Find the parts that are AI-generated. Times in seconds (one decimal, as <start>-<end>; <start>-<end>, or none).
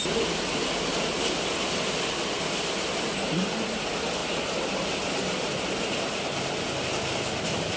none